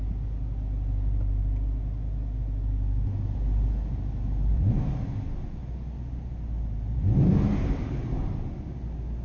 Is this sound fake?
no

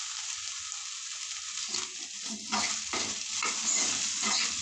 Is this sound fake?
no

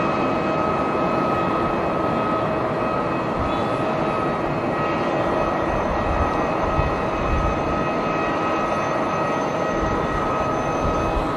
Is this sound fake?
no